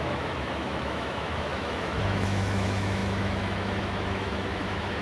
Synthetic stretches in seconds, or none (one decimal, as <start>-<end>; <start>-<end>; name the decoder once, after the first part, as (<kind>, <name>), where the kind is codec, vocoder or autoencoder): 0.0-5.0 (autoencoder, DAC-VAE)